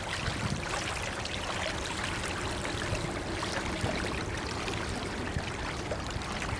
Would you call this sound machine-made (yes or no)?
no